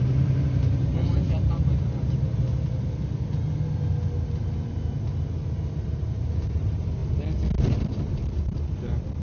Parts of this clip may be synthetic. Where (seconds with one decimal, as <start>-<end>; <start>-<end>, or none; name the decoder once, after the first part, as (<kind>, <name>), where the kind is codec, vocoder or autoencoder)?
0.0-2.3 (vocoder, BigVGAN v2); 5.9-7.0; 7.6-9.2